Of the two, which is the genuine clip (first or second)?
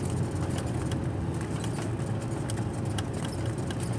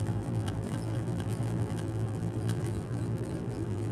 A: first